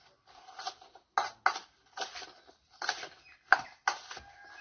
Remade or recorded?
recorded